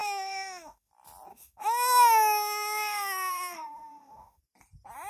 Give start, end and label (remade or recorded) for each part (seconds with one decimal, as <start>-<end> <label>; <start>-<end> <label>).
0.0-0.9 remade; 0.9-1.3 recorded; 1.3-4.4 remade; 4.4-5.1 recorded